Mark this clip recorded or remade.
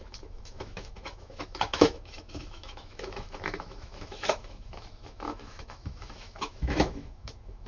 remade